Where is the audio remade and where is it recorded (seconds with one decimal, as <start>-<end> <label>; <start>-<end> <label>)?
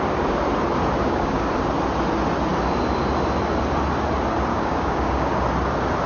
0.0-1.0 recorded; 1.0-1.5 remade; 1.5-4.5 recorded; 4.5-5.4 remade; 5.4-6.1 recorded